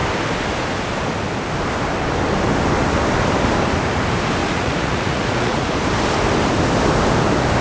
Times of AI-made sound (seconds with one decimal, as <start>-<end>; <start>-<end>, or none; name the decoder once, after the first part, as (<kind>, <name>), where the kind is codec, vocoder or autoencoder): 4.4-5.7 (vocoder, Vocos)